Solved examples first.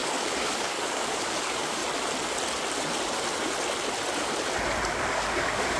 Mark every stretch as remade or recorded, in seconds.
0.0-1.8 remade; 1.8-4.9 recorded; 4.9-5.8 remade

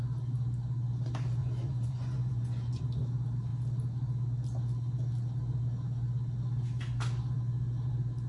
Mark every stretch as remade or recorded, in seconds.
0.0-1.4 recorded; 1.4-2.8 remade; 2.8-8.3 recorded

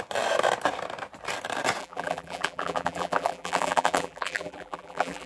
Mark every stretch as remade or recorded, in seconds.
0.0-1.8 recorded; 1.8-5.3 remade

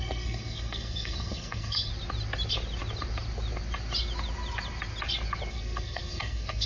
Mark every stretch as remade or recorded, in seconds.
0.0-1.9 remade; 1.9-5.5 recorded; 5.5-6.7 remade

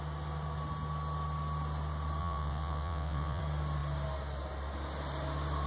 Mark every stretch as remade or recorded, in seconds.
0.0-2.2 recorded; 2.2-3.4 remade; 3.4-5.7 recorded